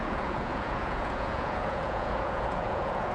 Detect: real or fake fake